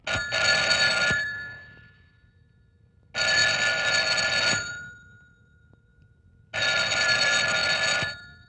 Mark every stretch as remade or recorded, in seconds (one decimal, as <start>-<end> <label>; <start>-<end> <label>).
0.0-8.5 recorded